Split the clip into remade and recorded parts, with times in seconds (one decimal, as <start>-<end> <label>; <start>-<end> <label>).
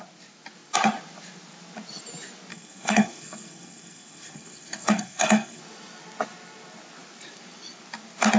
0.0-2.5 recorded; 2.5-5.6 remade; 5.6-8.4 recorded